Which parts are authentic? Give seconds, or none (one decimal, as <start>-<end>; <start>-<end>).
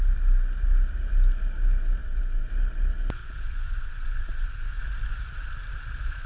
0.0-2.0; 2.5-3.2; 4.8-6.3